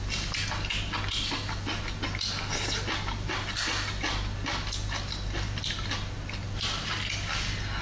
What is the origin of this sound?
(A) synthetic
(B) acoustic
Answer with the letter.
B